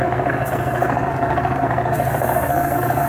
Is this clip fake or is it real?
fake